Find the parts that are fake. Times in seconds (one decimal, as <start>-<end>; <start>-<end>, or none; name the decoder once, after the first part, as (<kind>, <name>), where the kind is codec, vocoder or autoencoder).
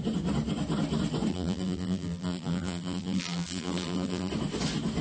1.3-4.3 (vocoder, BigVGAN v2)